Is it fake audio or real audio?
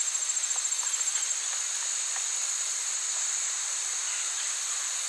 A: real